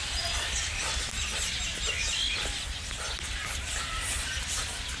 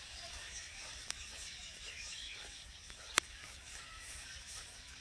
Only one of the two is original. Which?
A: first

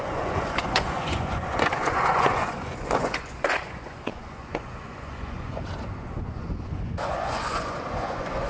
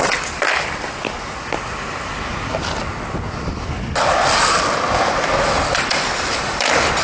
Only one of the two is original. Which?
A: second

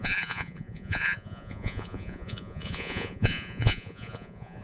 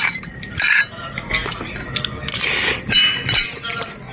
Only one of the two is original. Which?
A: second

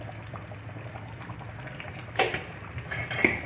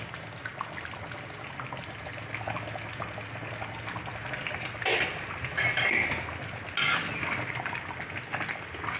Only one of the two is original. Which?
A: second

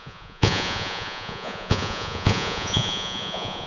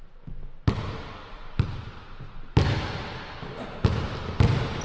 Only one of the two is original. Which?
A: second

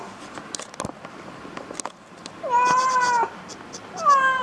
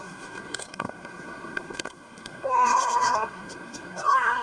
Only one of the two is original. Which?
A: first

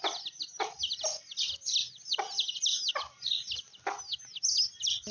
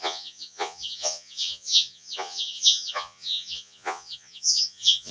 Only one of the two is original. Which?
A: first